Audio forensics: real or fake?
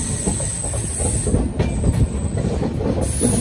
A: real